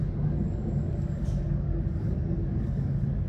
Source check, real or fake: fake